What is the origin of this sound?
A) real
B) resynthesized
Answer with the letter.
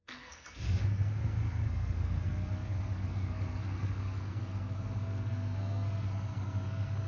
B